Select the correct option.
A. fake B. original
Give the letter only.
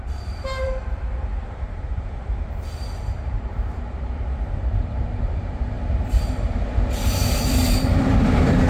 A